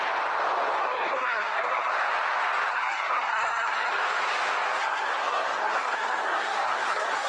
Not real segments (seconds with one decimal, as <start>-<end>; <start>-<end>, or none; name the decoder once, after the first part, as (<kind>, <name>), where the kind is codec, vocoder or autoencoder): 0.8-1.9 (codec, SNAC); 2.7-3.9; 4.8-7.3